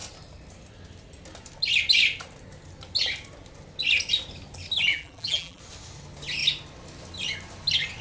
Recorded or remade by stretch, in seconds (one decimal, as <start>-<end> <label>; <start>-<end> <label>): 0.0-4.9 recorded; 4.9-5.6 remade; 5.6-8.0 recorded